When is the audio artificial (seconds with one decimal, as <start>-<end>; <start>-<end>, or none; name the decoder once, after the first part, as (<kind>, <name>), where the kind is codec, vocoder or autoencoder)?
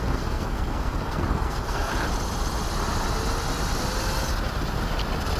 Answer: 0.0-1.9 (codec, SNAC)